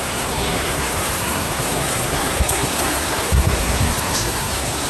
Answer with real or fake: fake